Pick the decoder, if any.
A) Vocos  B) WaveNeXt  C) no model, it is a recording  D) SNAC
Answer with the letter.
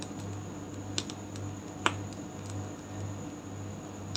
C